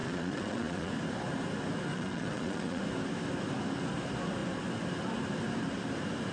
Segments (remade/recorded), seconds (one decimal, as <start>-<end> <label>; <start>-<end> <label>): 0.0-0.9 remade; 0.9-1.9 recorded; 1.9-2.8 remade; 2.8-6.3 recorded